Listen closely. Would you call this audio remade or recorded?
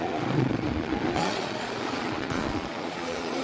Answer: remade